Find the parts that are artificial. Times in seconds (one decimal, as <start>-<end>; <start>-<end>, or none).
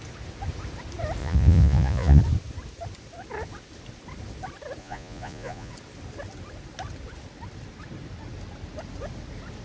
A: 1.2-2.2; 4.8-5.7